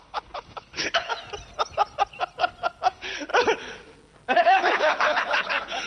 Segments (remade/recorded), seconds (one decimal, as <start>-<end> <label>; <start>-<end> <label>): 0.0-1.1 remade; 1.1-2.9 recorded; 2.9-3.3 remade; 3.3-4.4 recorded; 4.4-5.9 remade